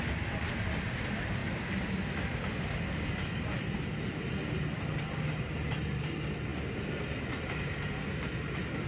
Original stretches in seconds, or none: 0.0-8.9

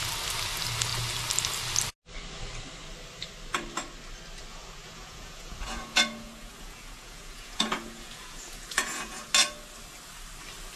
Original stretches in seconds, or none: 0.0-4.5; 9.3-10.8

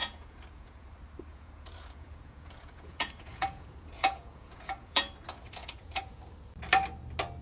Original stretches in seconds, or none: 0.9-1.3; 5.1-5.6; 6.2-7.4

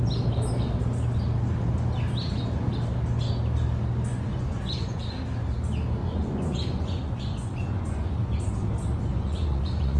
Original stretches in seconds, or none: 0.0-4.1; 5.0-6.0; 8.4-9.1

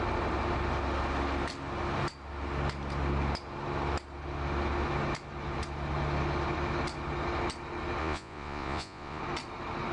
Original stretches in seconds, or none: 0.0-8.0; 9.2-9.9